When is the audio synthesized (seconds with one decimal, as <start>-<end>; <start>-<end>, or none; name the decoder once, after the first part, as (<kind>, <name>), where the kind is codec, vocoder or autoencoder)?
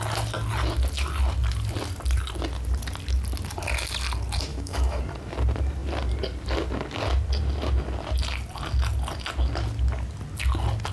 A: 4.5-5.0 (autoencoder, DAC-VAE)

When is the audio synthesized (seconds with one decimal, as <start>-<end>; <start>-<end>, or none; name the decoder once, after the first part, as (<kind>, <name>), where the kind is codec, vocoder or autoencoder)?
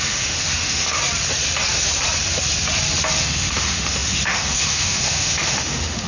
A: 0.0-1.0 (autoencoder, DAC-VAE); 3.2-6.1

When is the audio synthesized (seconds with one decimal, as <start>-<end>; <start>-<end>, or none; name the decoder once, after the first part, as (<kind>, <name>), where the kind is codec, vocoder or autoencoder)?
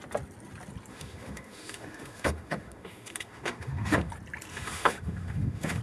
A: 0.9-4.1 (autoencoder, DAC-VAE); 4.5-5.8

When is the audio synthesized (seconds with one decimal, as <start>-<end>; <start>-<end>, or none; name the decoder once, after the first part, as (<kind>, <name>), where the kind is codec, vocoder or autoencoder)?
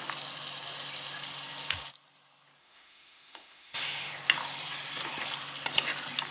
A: 2.6-4.1 (autoencoder, DAC-VAE)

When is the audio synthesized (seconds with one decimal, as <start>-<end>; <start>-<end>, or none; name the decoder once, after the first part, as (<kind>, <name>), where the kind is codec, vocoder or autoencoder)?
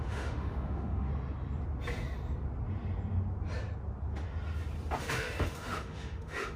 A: 0.0-1.1 (autoencoder, DAC-VAE); 5.0-6.6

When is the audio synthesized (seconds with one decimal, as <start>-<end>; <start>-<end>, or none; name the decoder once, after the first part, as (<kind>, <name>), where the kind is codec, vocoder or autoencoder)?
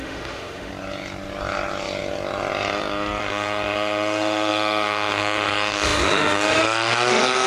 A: 0.0-0.7 (autoencoder, DAC-VAE); 3.2-7.5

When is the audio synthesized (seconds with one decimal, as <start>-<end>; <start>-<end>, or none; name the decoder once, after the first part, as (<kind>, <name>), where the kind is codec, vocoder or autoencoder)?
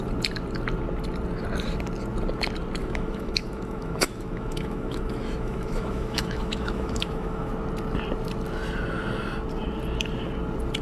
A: 2.8-7.5 (autoencoder, DAC-VAE)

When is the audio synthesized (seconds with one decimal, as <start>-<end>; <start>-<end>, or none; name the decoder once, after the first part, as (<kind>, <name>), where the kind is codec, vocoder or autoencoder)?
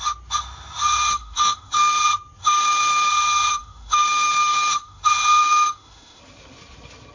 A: 1.1-2.0 (autoencoder, DAC-VAE); 2.4-3.1; 3.5-5.0; 5.4-6.2